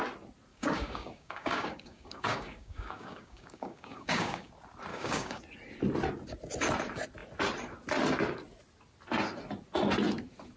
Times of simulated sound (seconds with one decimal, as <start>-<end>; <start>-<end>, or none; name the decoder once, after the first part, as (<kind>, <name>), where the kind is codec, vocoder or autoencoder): 0.5-4.5 (codec, DAC); 4.9-5.4